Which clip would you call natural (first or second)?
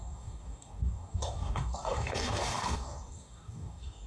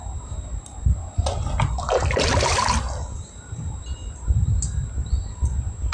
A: second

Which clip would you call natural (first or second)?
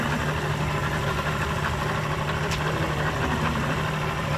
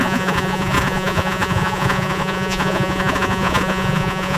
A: first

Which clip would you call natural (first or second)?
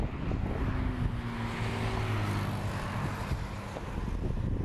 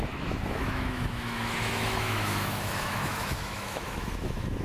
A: first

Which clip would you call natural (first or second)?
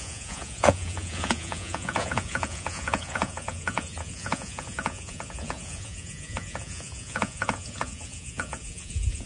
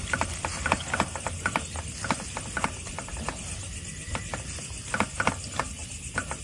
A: second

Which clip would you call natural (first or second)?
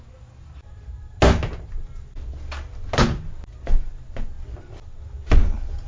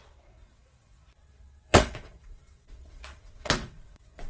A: first